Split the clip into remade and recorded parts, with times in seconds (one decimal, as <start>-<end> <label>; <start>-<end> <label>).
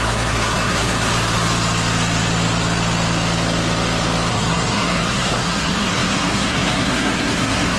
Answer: 0.0-1.1 remade; 1.1-4.3 recorded; 4.3-7.8 remade